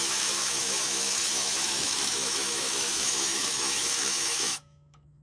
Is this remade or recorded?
remade